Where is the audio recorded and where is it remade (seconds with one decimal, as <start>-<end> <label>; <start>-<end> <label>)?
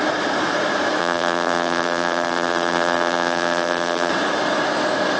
0.0-1.0 recorded; 1.0-4.1 remade; 4.1-5.2 recorded